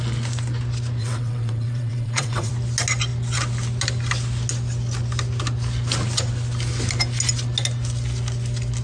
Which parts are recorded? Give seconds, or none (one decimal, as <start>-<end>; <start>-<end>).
0.0-1.0; 2.5-8.8